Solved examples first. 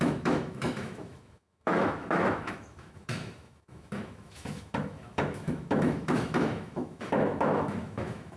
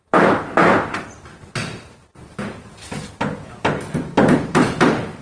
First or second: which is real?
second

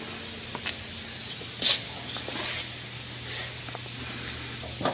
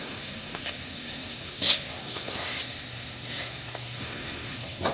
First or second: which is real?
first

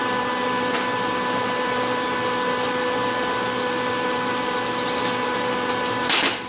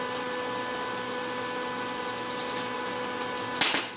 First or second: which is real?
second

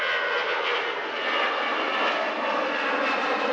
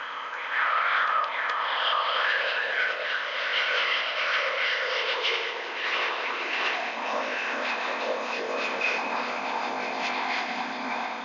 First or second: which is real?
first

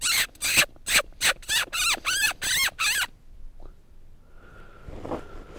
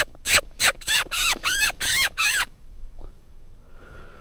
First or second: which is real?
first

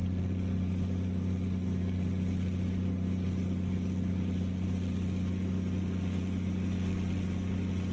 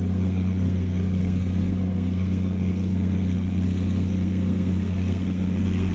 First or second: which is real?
first